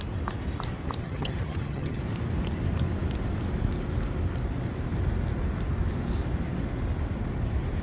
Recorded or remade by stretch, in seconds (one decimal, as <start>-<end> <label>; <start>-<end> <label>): 0.0-1.0 recorded; 1.0-2.0 remade; 2.0-7.8 recorded